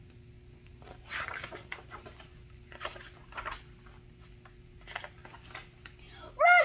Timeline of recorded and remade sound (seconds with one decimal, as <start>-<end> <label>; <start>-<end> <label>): 0.0-6.6 recorded